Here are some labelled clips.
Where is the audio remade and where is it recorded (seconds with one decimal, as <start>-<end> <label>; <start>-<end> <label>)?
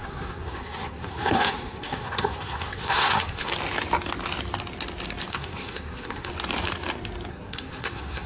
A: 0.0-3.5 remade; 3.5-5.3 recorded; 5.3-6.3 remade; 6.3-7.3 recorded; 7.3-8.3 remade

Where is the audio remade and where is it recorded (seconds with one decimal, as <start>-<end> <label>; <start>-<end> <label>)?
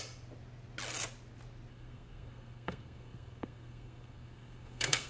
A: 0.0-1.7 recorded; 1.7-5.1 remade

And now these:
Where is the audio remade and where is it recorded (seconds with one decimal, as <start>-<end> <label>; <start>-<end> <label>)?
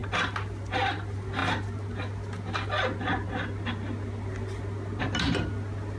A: 0.0-6.0 recorded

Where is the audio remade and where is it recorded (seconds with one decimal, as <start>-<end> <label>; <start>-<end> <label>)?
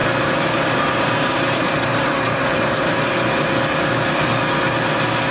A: 0.0-3.1 remade; 3.1-5.3 recorded